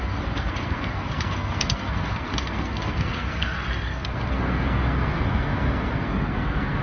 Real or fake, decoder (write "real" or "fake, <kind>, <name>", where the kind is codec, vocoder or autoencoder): fake, codec, SNAC